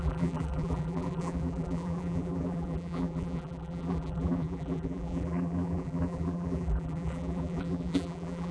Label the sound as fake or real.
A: fake